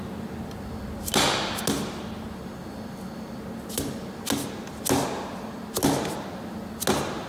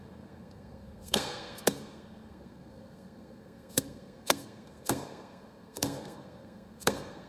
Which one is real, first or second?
first